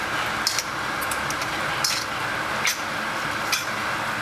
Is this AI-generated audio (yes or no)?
no